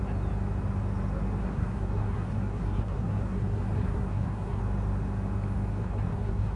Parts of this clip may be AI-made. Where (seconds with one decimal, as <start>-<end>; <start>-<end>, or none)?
1.4-4.6; 5.7-6.6